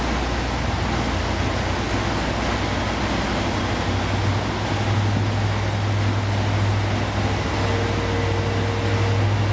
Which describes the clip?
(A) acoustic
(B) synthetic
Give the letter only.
A